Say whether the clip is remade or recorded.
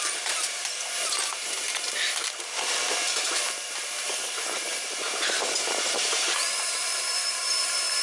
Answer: remade